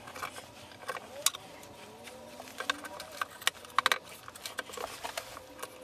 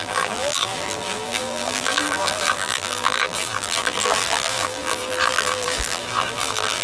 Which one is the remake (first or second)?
second